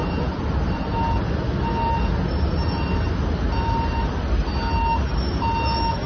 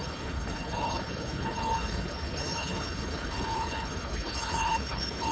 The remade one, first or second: second